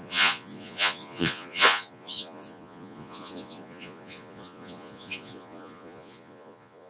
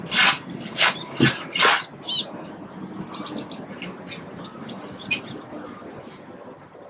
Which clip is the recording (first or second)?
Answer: second